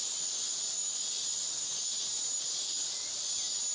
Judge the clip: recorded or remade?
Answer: recorded